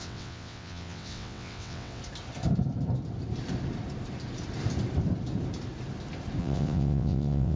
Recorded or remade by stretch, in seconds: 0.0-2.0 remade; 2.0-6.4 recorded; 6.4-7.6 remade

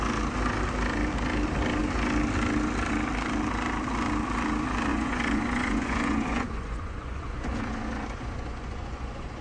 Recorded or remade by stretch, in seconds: 0.0-4.9 recorded; 4.9-9.4 remade

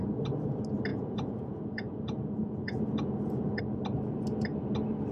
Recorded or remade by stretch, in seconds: 0.0-0.9 recorded; 0.9-3.6 remade; 3.6-5.1 recorded

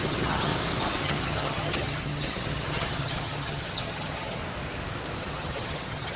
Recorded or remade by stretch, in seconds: 0.0-0.5 remade; 0.5-1.0 recorded; 1.0-4.4 remade; 4.4-5.2 recorded; 5.2-6.2 remade